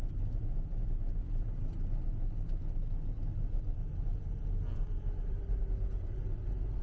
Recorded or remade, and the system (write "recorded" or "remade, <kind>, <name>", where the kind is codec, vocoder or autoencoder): recorded